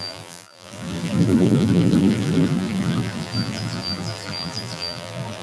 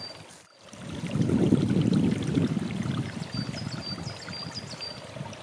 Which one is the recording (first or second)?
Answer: second